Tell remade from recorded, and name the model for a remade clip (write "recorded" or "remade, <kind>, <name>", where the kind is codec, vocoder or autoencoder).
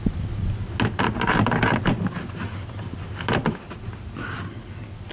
recorded